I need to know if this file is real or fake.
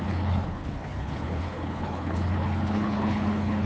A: fake